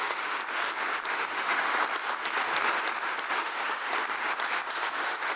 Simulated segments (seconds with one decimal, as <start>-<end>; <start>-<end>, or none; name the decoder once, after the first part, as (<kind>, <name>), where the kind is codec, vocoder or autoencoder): 0.0-0.4 (autoencoder, DAC-VAE); 1.1-1.7; 3.3-3.9; 4.9-5.4